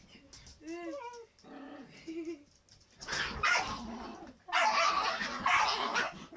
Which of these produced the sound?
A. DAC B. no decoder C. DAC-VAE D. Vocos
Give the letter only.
B